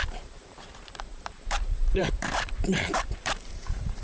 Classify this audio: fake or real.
fake